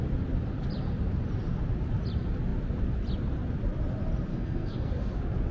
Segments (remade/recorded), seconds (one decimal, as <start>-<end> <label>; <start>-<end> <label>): 0.0-4.3 recorded; 4.3-4.9 remade; 4.9-5.5 recorded